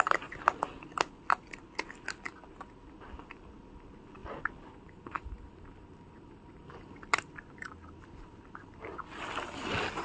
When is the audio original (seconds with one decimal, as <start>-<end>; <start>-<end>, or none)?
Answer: 0.0-10.0